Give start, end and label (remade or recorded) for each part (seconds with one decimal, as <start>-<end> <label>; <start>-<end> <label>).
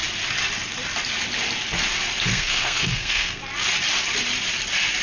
0.0-2.3 recorded; 2.3-3.4 remade; 3.4-5.0 recorded